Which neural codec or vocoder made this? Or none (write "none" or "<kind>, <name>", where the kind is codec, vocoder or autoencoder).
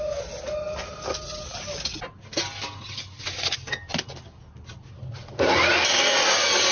none